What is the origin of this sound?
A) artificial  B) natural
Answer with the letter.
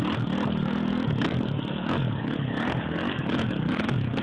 A